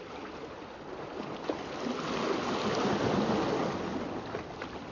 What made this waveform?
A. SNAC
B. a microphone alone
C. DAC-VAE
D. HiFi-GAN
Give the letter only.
B